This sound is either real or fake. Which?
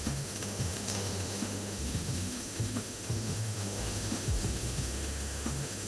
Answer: fake